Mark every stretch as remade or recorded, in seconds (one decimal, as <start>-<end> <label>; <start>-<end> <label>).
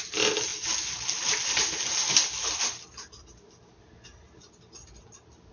0.0-5.5 recorded